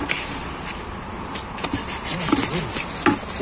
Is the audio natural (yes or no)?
yes